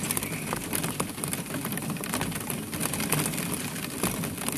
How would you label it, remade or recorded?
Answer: recorded